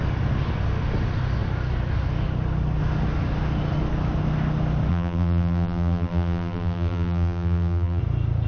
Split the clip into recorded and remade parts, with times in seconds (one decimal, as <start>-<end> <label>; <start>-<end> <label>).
0.0-4.9 recorded; 4.9-8.0 remade; 8.0-8.5 recorded